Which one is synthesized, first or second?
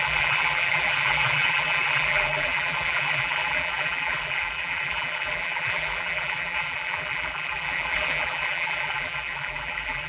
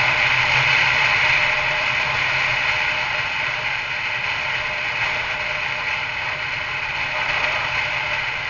first